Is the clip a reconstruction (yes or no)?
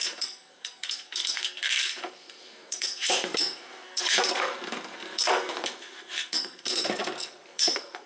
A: yes